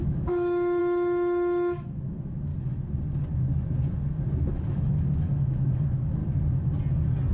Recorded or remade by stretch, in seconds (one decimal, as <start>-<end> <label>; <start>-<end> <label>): 0.0-2.5 remade; 2.5-4.5 recorded; 4.5-6.2 remade; 6.2-7.3 recorded